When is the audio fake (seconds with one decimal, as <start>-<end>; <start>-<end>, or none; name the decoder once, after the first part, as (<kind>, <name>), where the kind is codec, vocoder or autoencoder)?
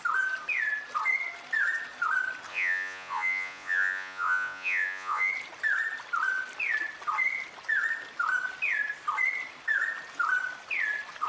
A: 2.5-5.3 (vocoder, Vocos)